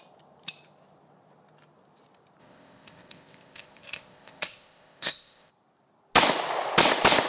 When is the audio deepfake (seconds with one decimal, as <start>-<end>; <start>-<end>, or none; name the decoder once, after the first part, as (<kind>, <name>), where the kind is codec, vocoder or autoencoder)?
2.4-5.5 (codec, ZipCodec)